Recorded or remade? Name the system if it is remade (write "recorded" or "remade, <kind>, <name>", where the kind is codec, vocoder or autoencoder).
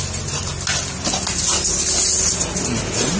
recorded